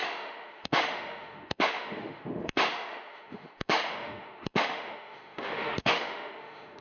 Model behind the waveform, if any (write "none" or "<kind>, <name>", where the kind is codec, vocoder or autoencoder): autoencoder, DAC-VAE